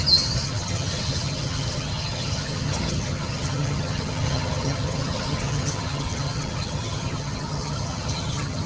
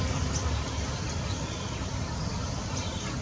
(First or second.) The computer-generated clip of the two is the first